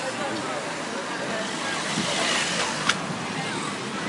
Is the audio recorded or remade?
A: recorded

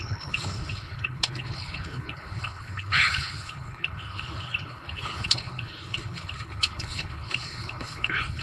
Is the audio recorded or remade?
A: remade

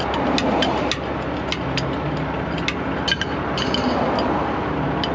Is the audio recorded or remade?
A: recorded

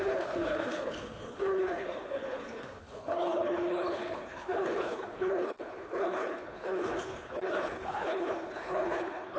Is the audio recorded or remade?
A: remade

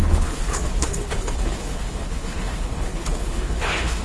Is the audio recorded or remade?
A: remade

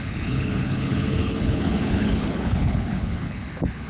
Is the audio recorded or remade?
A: remade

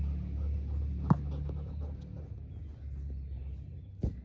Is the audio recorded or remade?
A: recorded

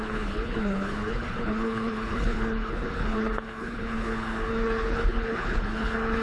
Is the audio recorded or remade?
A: remade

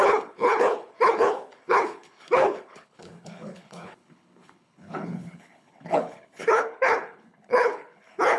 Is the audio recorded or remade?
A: remade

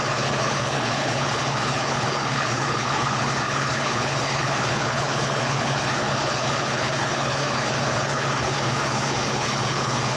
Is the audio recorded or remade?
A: remade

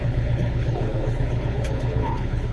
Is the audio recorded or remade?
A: remade